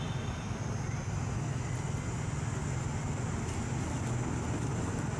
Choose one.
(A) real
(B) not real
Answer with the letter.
A